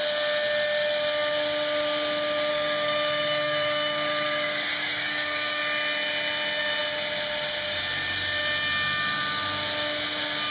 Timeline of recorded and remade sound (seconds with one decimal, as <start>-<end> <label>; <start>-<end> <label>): 0.0-2.5 recorded; 2.5-5.6 remade; 5.6-10.5 recorded

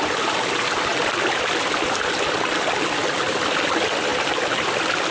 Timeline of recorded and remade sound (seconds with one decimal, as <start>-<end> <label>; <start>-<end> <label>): 0.0-5.1 recorded

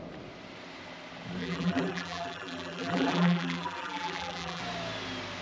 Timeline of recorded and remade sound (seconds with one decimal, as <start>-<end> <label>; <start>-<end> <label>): 0.0-1.4 recorded; 1.4-4.6 remade; 4.6-5.4 recorded

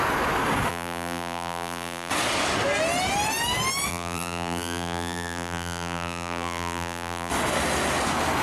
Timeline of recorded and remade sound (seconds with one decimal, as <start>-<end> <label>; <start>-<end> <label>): 0.0-0.7 recorded; 0.7-2.1 remade; 2.1-3.9 recorded; 3.9-7.3 remade; 7.3-8.4 recorded